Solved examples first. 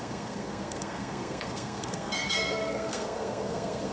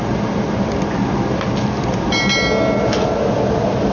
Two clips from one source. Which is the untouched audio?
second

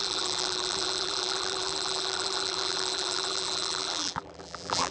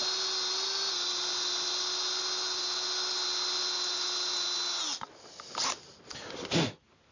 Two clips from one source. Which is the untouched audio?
second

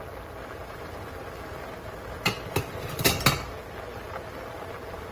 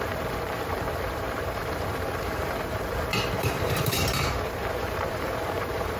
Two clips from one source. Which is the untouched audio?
first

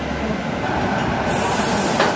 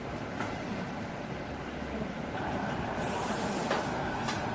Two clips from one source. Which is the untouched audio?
first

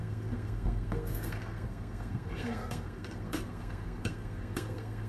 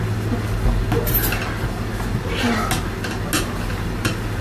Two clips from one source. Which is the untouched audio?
second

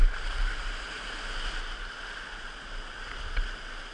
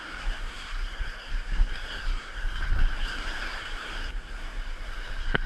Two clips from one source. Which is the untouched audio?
first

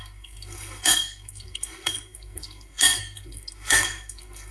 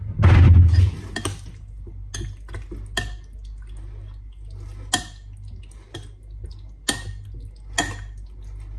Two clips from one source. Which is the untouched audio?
second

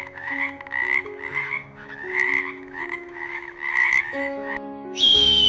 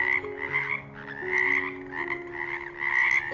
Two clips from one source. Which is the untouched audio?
second